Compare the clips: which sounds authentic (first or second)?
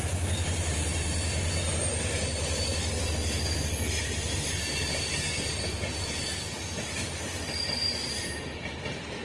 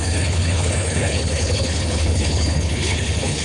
first